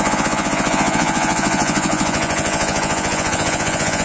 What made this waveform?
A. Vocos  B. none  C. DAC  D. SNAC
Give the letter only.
A